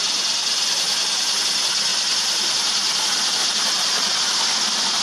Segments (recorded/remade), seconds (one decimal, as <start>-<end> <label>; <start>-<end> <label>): 0.0-1.9 recorded; 1.9-2.5 remade; 2.5-3.4 recorded; 3.4-4.3 remade; 4.3-5.0 recorded